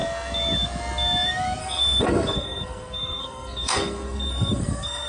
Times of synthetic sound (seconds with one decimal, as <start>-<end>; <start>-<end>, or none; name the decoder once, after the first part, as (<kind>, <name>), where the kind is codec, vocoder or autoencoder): 1.6-5.1 (codec, SNAC)